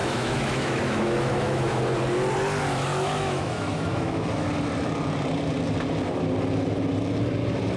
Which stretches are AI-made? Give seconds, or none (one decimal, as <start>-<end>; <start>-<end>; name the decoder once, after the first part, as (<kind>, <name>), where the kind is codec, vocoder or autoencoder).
0.0-1.8 (autoencoder, DAC-VAE); 2.9-4.5